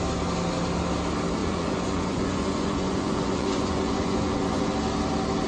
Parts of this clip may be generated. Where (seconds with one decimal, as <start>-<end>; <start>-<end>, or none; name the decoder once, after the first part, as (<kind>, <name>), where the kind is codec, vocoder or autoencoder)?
1.4-4.7 (vocoder, Vocos)